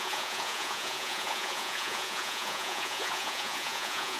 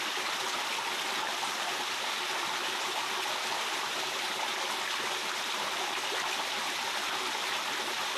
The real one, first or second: second